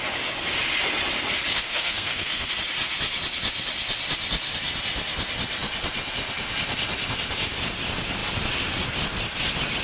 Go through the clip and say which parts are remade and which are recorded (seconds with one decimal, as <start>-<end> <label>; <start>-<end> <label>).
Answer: 0.0-1.5 recorded; 1.5-2.5 remade; 2.5-9.8 recorded

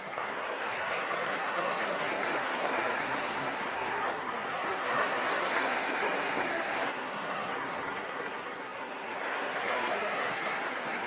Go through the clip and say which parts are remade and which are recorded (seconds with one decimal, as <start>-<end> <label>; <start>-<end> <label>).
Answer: 0.0-11.1 remade

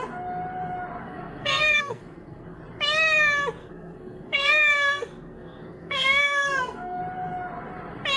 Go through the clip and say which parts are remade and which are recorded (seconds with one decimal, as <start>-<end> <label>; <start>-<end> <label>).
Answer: 0.0-1.0 recorded; 1.0-2.6 remade; 2.6-3.6 recorded; 3.6-7.0 remade; 7.0-8.2 recorded

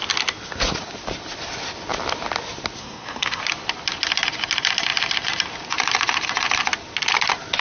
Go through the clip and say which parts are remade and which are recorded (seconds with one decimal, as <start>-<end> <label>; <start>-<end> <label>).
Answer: 0.0-2.8 recorded; 2.8-3.4 remade; 3.4-7.6 recorded